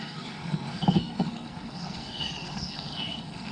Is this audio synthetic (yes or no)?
yes